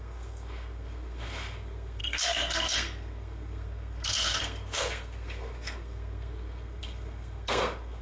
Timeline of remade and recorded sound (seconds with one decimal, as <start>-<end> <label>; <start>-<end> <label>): 0.0-8.0 remade